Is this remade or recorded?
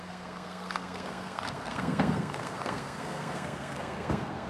remade